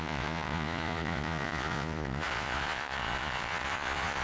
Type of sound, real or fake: fake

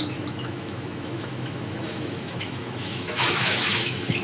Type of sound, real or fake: fake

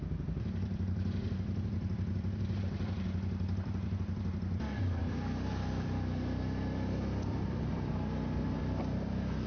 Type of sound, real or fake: fake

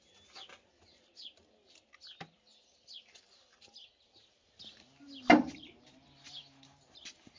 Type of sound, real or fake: real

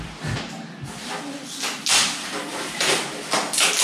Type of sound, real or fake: real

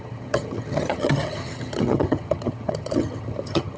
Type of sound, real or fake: fake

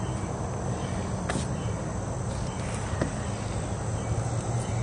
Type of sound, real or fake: real